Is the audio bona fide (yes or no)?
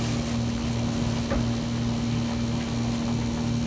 yes